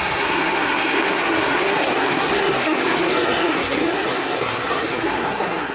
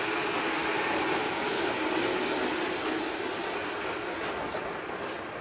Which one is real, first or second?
second